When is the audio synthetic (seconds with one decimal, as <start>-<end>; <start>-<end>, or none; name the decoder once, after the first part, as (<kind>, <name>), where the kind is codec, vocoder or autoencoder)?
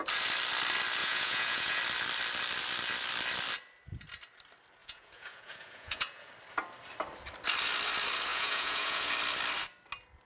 1.0-1.8 (vocoder, Vocos); 4.8-6.3; 8.3-9.1